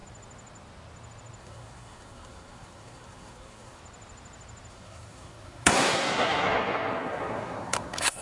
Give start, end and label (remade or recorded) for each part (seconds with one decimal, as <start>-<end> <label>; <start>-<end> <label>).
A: 0.0-1.4 recorded; 1.4-3.8 remade; 3.8-4.7 recorded; 4.7-8.2 remade